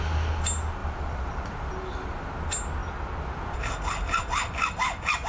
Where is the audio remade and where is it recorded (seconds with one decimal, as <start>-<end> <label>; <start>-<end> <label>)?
0.0-0.8 recorded; 0.8-1.7 remade; 1.7-5.3 recorded